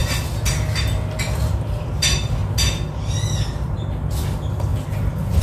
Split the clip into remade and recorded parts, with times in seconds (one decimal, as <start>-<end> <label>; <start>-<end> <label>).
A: 0.0-1.5 recorded; 1.5-2.4 remade; 2.4-3.5 recorded; 3.5-4.7 remade; 4.7-5.4 recorded